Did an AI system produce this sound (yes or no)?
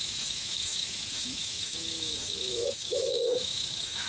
yes